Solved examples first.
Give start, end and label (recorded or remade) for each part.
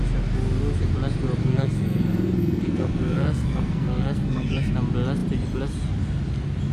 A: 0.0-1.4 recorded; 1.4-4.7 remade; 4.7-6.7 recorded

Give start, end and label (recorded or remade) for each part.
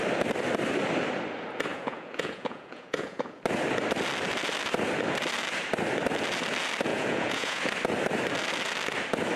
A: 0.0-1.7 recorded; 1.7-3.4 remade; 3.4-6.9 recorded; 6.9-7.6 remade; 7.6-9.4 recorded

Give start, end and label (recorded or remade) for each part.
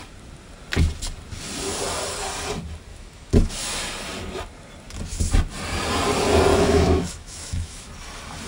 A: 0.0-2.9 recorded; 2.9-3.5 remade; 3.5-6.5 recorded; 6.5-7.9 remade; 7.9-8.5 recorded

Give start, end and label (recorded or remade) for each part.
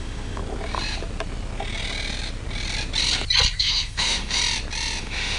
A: 0.0-0.4 remade; 0.4-3.6 recorded; 3.6-4.4 remade; 4.4-5.0 recorded; 5.0-5.4 remade